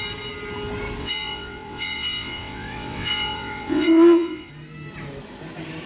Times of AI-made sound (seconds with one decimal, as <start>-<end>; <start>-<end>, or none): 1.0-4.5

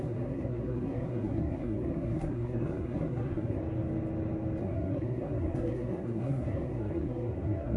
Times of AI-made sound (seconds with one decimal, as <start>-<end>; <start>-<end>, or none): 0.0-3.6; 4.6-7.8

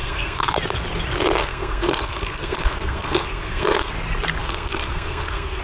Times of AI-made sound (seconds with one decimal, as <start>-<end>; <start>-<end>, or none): 0.0-0.5; 1.4-3.9; 4.4-5.6

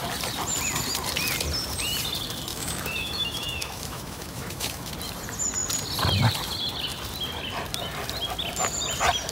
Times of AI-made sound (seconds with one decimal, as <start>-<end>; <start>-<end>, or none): 2.5-4.9

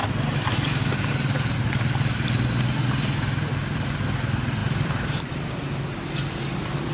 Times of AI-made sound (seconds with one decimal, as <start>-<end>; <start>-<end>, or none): 0.9-6.9

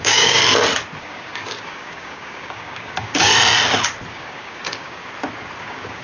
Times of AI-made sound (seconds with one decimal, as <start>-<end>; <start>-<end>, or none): 0.0-0.4; 1.0-3.3; 4.1-5.0; 5.6-6.0

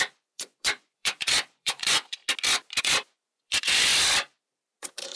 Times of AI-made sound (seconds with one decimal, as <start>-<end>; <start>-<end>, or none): 0.0-2.2; 2.8-3.9; 4.8-5.2